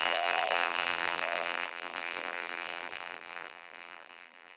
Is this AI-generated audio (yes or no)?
yes